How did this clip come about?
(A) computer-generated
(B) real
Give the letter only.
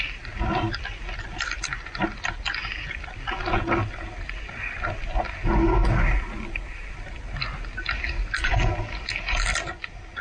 B